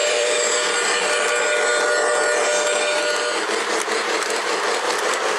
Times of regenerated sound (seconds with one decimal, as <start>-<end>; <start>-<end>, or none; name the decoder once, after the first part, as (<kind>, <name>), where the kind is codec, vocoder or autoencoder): 0.0-1.0 (vocoder, BigVGAN v2)